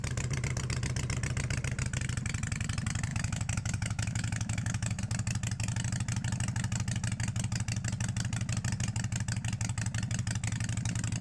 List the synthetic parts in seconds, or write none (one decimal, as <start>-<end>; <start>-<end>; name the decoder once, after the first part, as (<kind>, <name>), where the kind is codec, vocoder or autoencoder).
3.1-5.0 (autoencoder, DAC-VAE)